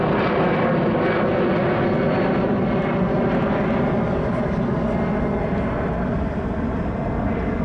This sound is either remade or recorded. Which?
recorded